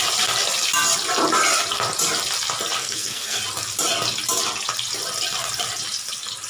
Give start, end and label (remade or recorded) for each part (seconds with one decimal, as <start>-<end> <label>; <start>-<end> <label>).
0.0-2.8 recorded; 2.8-3.4 remade; 3.4-6.5 recorded

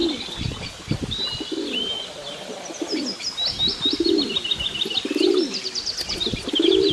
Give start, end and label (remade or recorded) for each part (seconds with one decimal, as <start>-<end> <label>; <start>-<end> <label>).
0.0-6.9 recorded

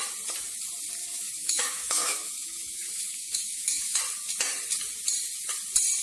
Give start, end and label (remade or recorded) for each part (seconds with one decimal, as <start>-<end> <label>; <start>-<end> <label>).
0.0-1.0 recorded; 1.0-4.0 remade; 4.0-6.0 recorded